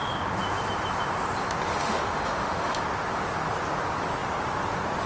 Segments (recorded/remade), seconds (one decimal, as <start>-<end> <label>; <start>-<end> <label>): 0.0-1.7 recorded; 1.7-2.8 remade; 2.8-5.1 recorded